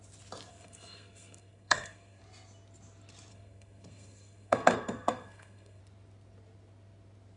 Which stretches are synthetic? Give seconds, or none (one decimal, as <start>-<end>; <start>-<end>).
0.5-2.2; 3.3-5.8